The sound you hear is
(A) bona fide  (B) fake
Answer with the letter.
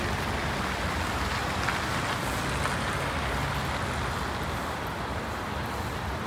A